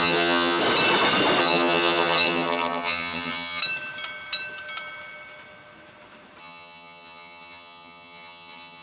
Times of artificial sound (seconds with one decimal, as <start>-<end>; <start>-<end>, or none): 0.0-0.6; 1.4-3.6; 6.4-8.8

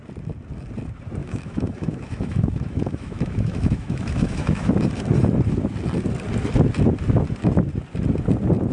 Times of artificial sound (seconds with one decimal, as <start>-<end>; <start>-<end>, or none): 1.2-4.7

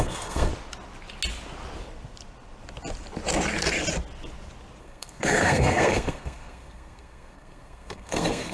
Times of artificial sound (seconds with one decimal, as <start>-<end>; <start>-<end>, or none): 0.0-0.5; 4.8-8.5

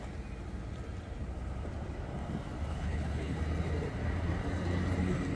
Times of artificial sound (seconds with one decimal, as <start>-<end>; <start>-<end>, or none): 2.7-3.4